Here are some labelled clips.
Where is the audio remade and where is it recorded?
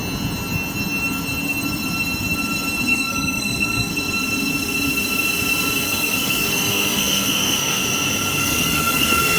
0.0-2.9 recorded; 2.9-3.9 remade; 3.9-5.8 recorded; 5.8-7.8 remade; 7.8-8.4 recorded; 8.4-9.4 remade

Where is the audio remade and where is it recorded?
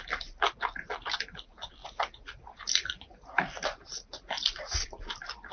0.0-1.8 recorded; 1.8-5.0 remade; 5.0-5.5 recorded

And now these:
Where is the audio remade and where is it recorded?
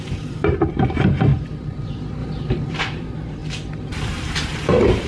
0.0-1.3 remade; 1.3-1.8 recorded; 1.8-3.4 remade; 3.4-4.0 recorded; 4.0-5.1 remade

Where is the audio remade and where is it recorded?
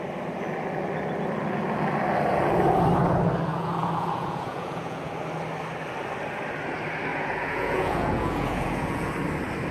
0.0-3.5 recorded; 3.5-5.1 remade; 5.1-7.1 recorded; 7.1-9.1 remade; 9.1-9.7 recorded